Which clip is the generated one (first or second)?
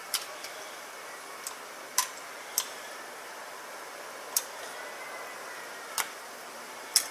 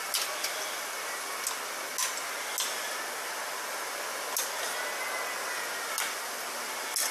first